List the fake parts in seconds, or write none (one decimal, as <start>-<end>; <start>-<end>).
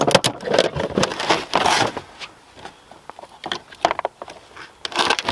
none